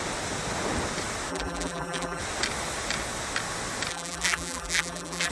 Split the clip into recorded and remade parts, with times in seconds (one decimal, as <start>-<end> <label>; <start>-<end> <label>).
0.0-1.3 recorded; 1.3-2.2 remade; 2.2-3.9 recorded; 3.9-5.3 remade